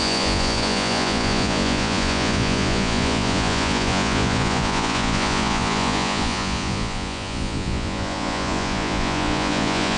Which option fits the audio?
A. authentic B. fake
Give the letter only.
B